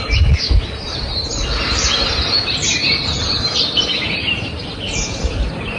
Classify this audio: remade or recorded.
recorded